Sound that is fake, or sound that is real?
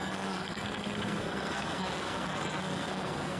fake